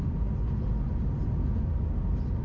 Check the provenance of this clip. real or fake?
real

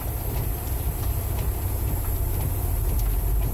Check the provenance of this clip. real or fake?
real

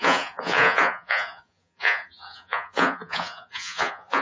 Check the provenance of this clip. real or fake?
fake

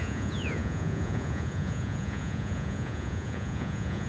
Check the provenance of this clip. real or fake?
fake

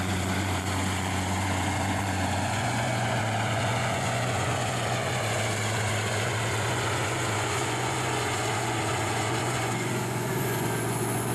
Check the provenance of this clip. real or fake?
fake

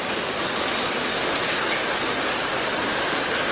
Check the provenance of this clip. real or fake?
real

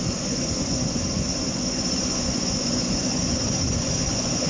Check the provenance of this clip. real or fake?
fake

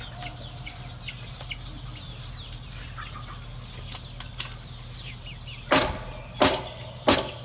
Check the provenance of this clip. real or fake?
real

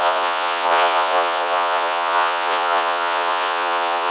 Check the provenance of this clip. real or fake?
fake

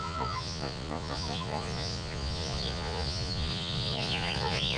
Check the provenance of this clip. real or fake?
fake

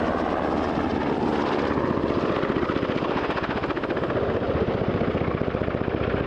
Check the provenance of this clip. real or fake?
real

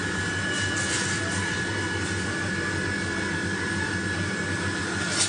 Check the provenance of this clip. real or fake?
real